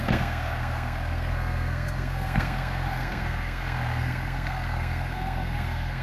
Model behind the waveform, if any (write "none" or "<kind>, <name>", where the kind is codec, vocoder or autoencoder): codec, SNAC